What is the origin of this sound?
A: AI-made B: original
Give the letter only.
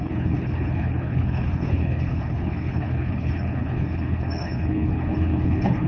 A